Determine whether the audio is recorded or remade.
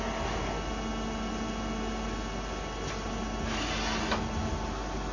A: recorded